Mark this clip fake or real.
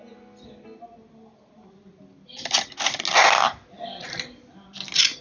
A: real